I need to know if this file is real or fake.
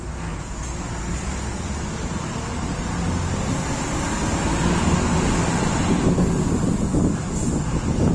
real